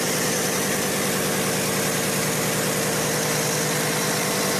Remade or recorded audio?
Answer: recorded